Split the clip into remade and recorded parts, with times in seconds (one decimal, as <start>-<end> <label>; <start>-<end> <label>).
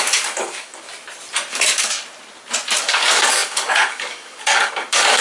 0.0-0.9 remade; 0.9-1.5 recorded; 1.5-2.0 remade; 2.0-2.8 recorded; 2.8-5.2 remade